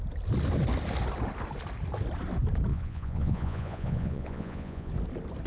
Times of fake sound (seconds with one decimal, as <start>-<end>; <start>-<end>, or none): 2.7-4.9